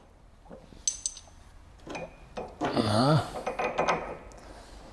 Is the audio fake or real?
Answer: real